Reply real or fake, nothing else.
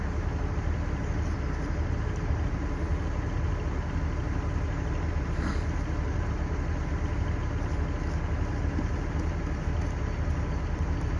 real